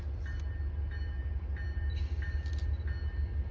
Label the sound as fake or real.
real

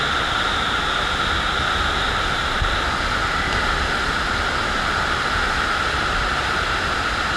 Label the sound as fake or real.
real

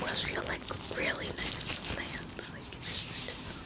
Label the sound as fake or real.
real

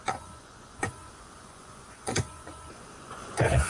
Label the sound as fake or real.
fake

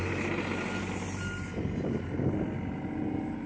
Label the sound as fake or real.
real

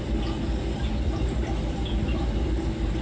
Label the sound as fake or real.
real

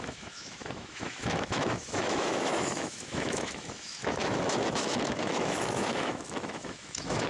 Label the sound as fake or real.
fake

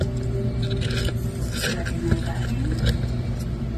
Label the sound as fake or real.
real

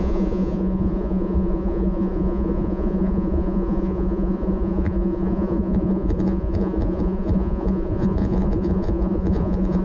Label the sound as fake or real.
fake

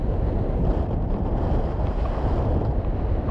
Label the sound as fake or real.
real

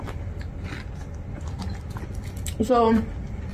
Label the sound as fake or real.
real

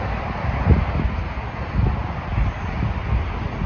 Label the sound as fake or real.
real